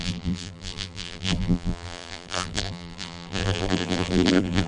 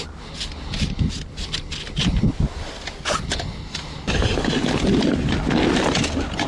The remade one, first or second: first